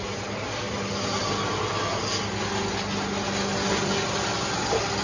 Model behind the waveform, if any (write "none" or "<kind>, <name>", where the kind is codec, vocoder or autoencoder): none